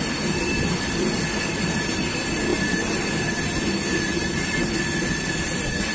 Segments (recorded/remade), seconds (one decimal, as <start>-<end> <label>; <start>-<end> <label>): 0.0-5.9 recorded